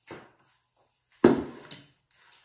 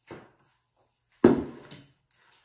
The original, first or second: second